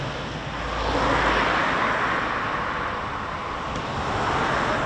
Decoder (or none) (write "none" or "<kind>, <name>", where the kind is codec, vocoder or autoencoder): none